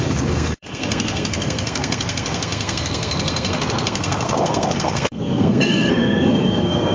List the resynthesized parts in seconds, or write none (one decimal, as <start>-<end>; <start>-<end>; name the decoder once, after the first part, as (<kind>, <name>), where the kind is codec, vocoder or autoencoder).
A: 0.0-6.9 (codec, SNAC)

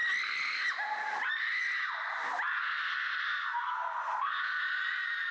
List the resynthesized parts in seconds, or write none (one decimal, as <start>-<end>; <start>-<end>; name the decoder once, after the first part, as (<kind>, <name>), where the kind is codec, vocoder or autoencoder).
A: 2.6-4.6 (codec, SNAC)